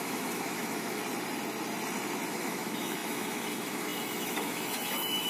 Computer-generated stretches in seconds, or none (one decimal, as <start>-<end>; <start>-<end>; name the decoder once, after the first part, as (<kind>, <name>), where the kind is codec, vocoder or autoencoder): 0.0-1.0 (autoencoder, DAC-VAE); 2.3-5.3